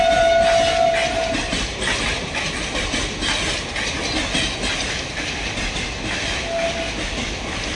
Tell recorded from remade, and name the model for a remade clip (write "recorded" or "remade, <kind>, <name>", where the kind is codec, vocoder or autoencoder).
recorded